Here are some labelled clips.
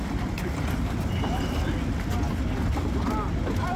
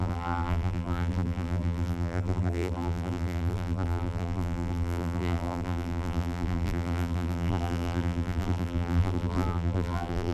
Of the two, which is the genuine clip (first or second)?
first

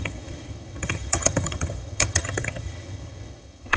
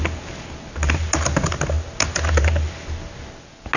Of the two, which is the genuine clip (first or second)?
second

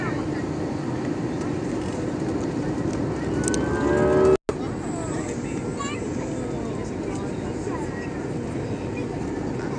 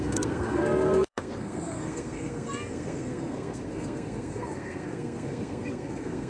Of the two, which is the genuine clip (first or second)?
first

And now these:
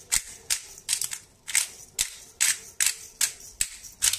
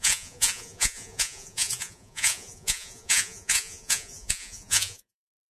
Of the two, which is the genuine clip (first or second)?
first